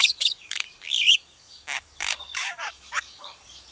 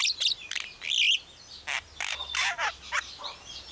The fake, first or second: first